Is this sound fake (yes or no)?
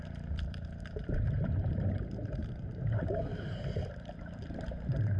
yes